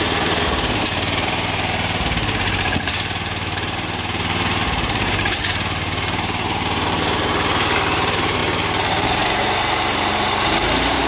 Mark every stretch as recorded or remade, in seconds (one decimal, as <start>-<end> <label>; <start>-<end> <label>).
0.0-8.4 remade; 8.4-8.9 recorded; 8.9-11.1 remade